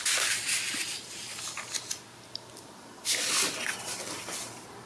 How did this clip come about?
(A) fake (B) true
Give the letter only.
B